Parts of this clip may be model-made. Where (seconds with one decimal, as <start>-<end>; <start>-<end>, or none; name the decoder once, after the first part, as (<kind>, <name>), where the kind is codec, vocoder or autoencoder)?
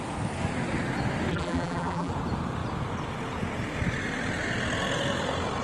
1.3-2.1 (vocoder, BigVGAN v2)